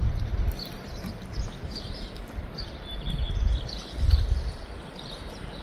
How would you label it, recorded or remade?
recorded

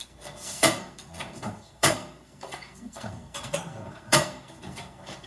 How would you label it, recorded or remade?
remade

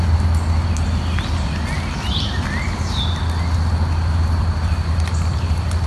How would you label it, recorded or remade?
recorded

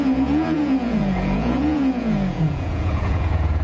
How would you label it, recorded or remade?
remade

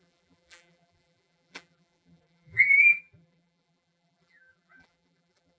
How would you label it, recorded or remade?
remade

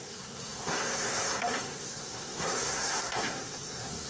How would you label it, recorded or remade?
remade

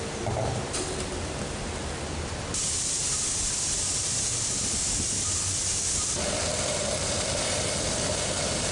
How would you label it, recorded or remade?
remade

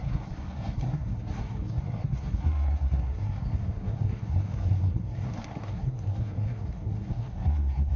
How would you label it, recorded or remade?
remade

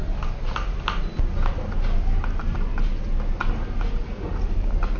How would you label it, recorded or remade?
recorded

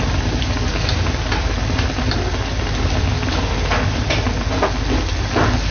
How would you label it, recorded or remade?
recorded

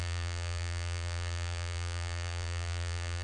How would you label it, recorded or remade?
remade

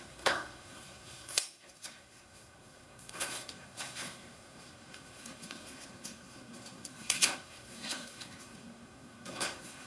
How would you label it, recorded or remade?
remade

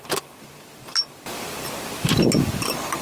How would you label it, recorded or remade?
recorded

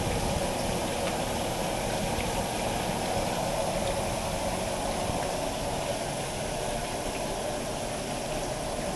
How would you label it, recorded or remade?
recorded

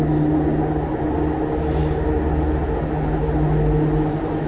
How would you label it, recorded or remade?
recorded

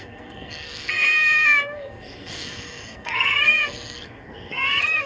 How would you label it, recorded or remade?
remade